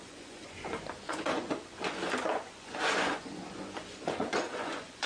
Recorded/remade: remade